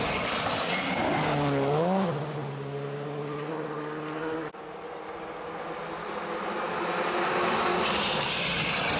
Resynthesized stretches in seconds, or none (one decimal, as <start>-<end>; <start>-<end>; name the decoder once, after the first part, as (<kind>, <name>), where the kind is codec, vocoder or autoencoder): none